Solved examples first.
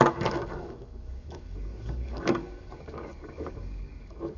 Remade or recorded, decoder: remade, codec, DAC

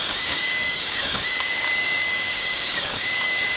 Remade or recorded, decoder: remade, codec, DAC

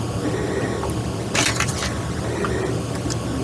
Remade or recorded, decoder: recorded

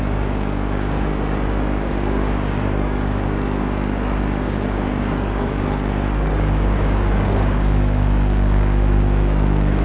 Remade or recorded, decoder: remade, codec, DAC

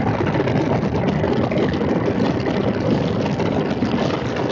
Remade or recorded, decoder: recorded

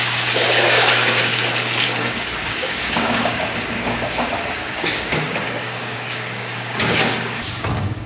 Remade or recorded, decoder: remade, codec, DAC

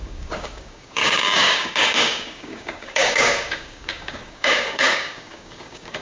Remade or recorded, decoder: remade, codec, DAC